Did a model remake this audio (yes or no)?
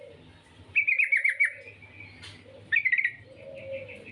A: no